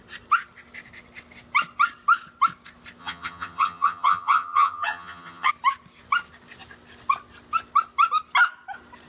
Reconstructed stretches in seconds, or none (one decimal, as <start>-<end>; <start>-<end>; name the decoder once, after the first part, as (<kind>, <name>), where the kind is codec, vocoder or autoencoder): 3.0-5.5 (vocoder, HiFi-GAN)